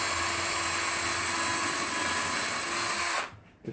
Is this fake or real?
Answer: real